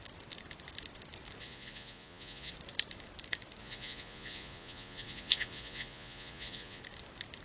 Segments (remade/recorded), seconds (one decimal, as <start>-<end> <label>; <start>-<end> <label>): 0.0-1.4 recorded; 1.4-2.5 remade; 2.5-3.6 recorded; 3.6-6.8 remade; 6.8-7.4 recorded